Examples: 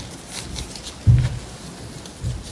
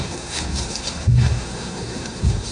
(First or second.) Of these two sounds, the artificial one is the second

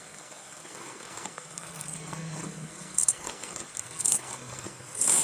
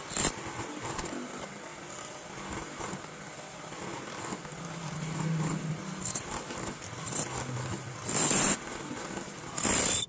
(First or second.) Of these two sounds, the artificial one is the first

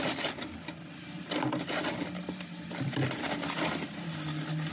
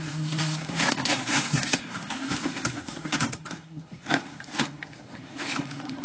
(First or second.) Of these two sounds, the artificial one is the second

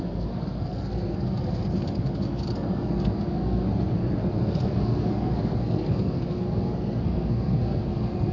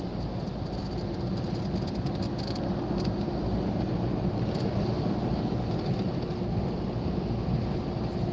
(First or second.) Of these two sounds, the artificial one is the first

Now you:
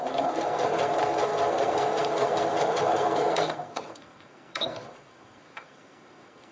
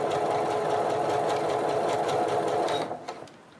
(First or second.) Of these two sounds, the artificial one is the first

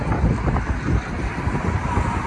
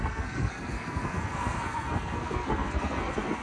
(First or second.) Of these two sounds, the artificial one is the second